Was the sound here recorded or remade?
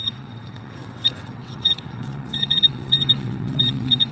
remade